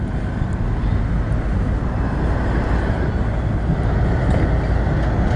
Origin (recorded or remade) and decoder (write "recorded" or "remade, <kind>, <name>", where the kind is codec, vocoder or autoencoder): recorded